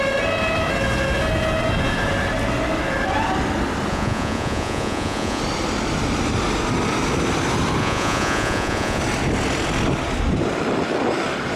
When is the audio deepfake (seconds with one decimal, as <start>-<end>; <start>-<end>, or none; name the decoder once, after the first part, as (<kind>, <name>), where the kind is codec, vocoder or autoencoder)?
3.9-5.4 (vocoder, Vocos); 7.8-9.0